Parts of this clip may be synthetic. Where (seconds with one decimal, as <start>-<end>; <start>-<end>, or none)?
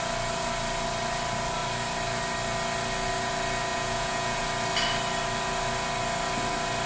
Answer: 3.7-4.4